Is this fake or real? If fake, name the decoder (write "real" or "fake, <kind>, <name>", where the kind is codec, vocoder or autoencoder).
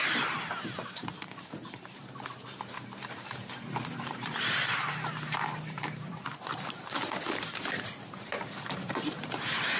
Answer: fake, vocoder, BigVGAN v2